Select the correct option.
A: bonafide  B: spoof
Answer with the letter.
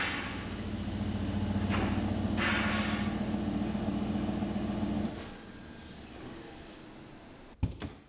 A